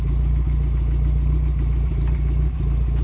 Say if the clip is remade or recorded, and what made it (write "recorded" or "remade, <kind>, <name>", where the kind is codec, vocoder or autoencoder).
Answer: recorded